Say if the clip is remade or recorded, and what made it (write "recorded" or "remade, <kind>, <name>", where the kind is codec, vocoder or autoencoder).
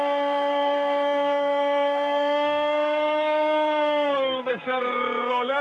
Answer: remade, codec, SNAC